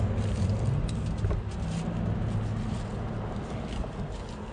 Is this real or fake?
real